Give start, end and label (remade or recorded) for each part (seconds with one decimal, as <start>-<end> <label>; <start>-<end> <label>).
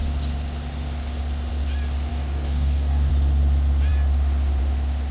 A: 0.0-2.1 recorded; 2.1-3.1 remade; 3.1-5.1 recorded